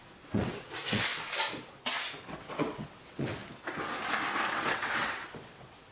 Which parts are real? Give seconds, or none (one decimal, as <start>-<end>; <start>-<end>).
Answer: 1.1-2.2; 3.4-4.5